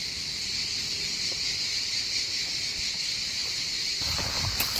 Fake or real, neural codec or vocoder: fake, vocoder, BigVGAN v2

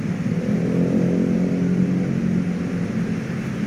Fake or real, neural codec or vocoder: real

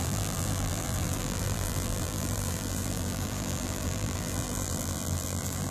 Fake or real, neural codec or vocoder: fake, vocoder, BigVGAN v2